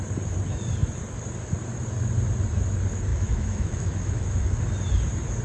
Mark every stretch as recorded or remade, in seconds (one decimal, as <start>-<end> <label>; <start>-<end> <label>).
0.0-3.1 recorded; 3.1-4.6 remade; 4.6-5.4 recorded